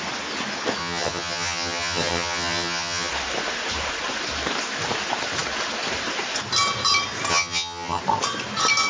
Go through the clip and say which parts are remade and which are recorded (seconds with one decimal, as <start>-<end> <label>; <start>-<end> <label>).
0.0-0.8 recorded; 0.8-3.1 remade; 3.1-7.3 recorded; 7.3-8.0 remade; 8.0-8.9 recorded